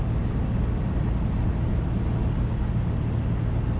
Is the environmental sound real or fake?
real